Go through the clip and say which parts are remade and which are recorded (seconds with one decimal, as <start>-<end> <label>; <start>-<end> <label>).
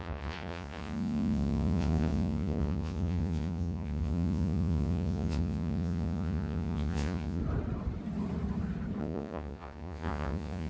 0.0-7.4 remade; 7.4-9.0 recorded; 9.0-10.7 remade